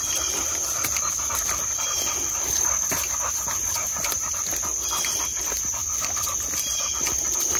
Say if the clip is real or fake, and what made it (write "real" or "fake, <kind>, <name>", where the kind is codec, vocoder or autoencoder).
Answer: real